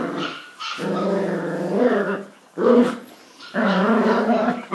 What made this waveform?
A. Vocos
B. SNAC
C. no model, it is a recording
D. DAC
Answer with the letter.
D